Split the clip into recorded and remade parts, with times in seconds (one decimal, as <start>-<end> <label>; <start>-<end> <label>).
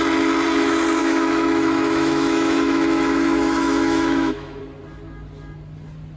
0.0-1.0 recorded; 1.0-4.6 remade; 4.6-6.2 recorded